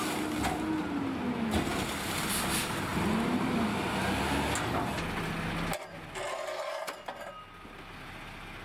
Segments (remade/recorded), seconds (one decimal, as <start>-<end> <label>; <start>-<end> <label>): 0.0-8.6 recorded